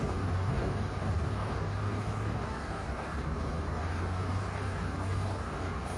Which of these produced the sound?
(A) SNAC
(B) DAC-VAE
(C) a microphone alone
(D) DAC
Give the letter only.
D